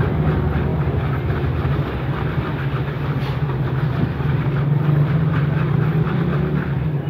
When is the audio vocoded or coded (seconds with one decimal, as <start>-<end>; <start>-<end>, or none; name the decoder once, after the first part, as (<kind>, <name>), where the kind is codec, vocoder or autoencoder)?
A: 0.0-0.7 (vocoder, BigVGAN v2); 3.7-7.1